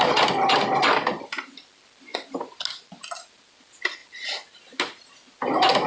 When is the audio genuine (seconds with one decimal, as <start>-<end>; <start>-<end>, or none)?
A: 0.0-5.9